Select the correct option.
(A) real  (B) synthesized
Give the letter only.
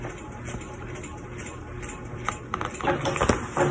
A